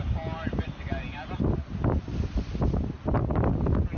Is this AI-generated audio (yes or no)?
no